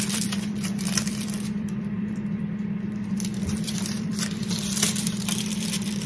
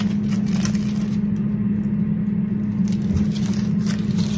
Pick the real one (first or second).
second